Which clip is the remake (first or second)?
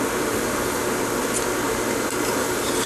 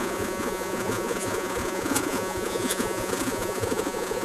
second